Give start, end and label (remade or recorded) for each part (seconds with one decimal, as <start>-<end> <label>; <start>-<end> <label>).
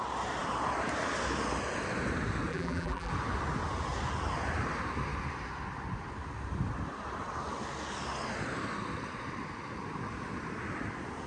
0.0-2.5 recorded; 2.5-3.1 remade; 3.1-11.3 recorded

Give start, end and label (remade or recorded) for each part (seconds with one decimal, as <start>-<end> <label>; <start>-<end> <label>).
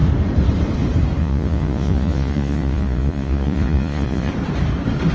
0.0-1.2 recorded; 1.2-4.3 remade; 4.3-5.1 recorded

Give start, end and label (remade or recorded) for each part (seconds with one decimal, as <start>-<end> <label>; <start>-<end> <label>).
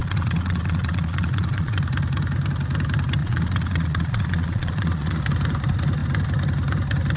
0.0-1.8 remade; 1.8-3.2 recorded; 3.2-5.2 remade; 5.2-7.2 recorded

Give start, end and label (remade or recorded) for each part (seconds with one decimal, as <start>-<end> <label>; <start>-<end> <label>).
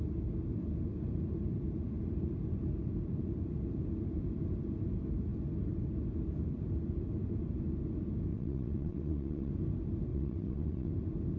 0.0-8.3 recorded; 8.3-9.5 remade; 9.5-10.1 recorded; 10.1-10.9 remade; 10.9-11.4 recorded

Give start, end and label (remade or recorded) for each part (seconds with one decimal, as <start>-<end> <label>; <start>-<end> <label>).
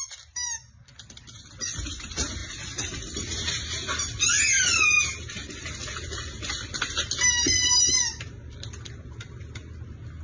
0.0-10.2 recorded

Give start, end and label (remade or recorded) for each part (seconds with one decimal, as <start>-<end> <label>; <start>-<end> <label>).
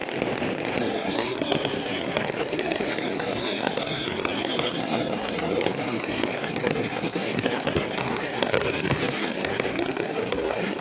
0.0-0.8 recorded; 0.8-10.8 remade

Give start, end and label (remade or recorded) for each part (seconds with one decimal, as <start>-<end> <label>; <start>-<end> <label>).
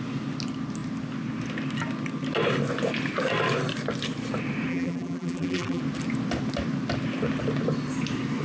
0.0-4.7 recorded; 4.7-5.8 remade; 5.8-8.4 recorded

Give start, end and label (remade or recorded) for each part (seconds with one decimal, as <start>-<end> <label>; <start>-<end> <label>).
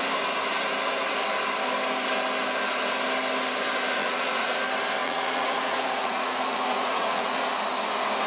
0.0-4.0 recorded; 4.0-4.6 remade; 4.6-5.0 recorded; 5.0-7.4 remade; 7.4-8.3 recorded